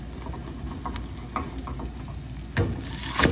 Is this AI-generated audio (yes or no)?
no